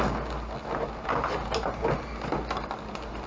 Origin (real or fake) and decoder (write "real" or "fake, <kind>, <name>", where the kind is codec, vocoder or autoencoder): real